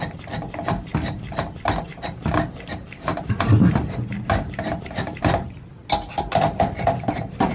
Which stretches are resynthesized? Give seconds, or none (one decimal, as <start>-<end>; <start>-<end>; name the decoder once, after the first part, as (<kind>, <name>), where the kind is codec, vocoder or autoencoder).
3.1-5.7 (vocoder, BigVGAN v2)